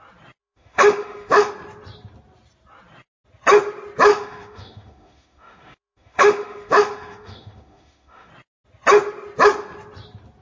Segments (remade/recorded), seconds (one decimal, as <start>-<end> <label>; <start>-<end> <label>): 0.0-0.4 recorded; 0.4-1.5 remade; 1.5-4.1 recorded; 4.1-8.3 remade; 8.3-10.4 recorded

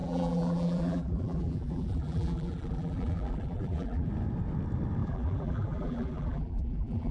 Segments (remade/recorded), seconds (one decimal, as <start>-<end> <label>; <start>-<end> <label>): 0.0-4.1 remade; 4.1-5.0 recorded; 5.0-7.1 remade